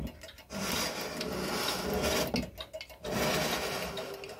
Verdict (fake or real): real